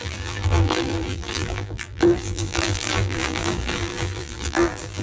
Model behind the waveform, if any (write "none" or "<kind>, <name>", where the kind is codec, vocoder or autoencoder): vocoder, BigVGAN v2